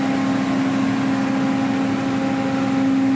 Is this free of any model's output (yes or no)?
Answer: yes